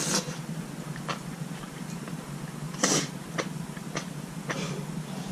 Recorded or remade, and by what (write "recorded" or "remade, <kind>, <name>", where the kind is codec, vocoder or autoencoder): recorded